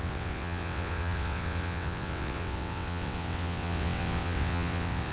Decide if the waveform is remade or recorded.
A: remade